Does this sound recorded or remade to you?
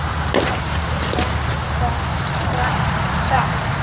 recorded